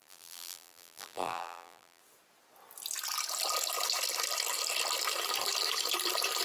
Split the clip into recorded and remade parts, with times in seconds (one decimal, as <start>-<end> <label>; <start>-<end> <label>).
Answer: 0.0-2.0 remade; 2.0-6.4 recorded